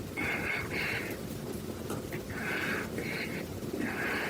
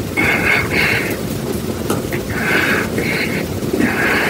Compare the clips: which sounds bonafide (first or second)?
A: first